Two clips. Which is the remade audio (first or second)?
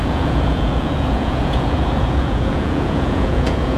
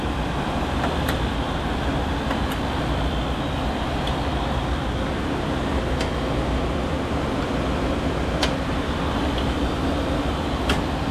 first